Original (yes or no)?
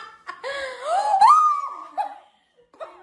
yes